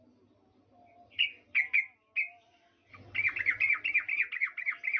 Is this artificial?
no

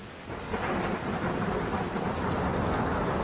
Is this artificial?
no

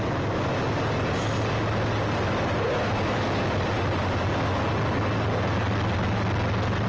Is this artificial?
no